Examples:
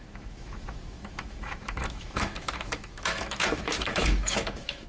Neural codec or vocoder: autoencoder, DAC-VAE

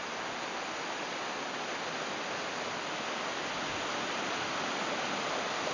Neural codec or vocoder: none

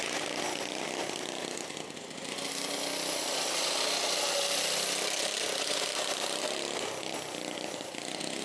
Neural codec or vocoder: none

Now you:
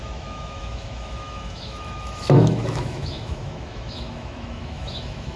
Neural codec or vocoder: autoencoder, DAC-VAE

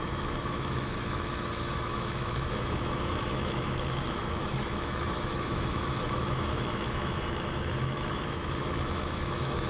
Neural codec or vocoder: autoencoder, DAC-VAE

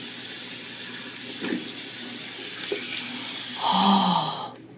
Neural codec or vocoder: none